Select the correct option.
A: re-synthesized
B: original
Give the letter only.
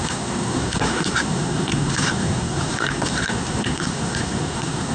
A